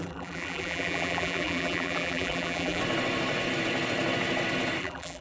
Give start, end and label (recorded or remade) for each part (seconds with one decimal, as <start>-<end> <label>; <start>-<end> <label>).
0.0-2.8 remade; 2.8-4.8 recorded; 4.8-5.2 remade